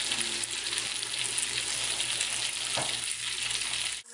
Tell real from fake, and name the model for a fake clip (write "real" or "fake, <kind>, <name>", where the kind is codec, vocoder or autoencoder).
real